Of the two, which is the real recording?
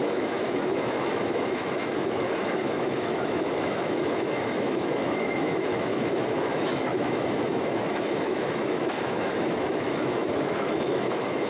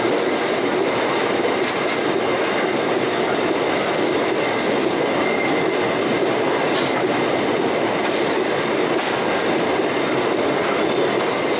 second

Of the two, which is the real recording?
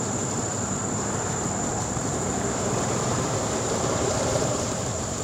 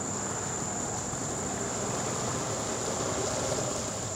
second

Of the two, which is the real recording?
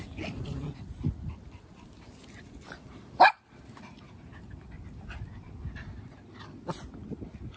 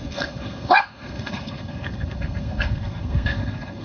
first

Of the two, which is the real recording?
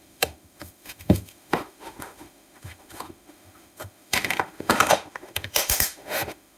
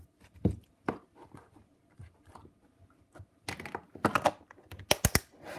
second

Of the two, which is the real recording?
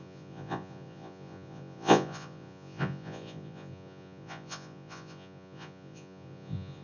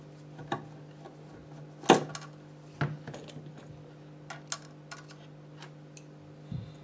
second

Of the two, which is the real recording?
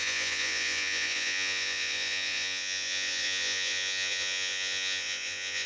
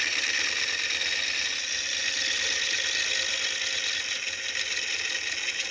second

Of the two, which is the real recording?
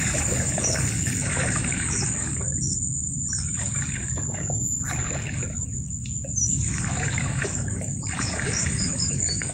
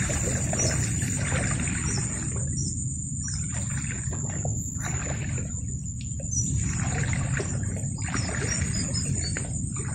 second